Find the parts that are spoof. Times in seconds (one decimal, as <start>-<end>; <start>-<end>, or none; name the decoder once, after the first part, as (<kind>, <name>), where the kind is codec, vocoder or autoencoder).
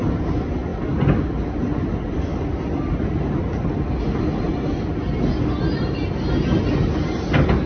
none